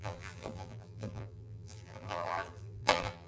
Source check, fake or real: fake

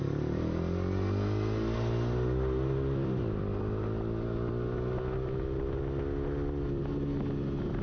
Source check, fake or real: real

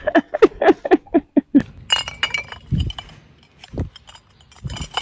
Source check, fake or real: real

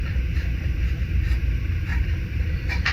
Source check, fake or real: fake